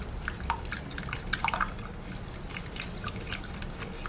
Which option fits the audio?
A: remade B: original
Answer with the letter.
B